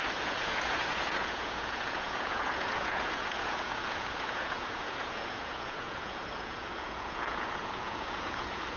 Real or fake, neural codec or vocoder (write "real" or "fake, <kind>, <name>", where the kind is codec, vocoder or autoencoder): fake, vocoder, Vocos